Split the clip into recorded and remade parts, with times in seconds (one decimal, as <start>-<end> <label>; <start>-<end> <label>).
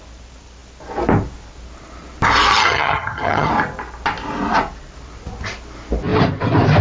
0.0-2.5 recorded; 2.5-3.5 remade; 3.5-6.8 recorded